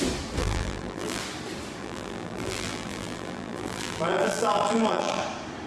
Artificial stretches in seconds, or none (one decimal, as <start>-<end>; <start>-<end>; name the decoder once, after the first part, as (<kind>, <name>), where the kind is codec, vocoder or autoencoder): 0.4-1.2 (vocoder, BigVGAN v2); 1.8-5.2